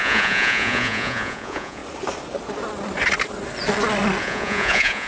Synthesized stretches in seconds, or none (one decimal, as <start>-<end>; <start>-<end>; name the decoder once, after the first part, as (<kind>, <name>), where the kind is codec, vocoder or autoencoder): 0.0-1.8 (vocoder, Vocos); 4.2-5.1